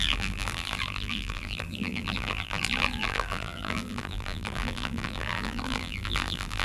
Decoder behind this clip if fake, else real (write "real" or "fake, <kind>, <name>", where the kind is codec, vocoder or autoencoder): fake, vocoder, BigVGAN v2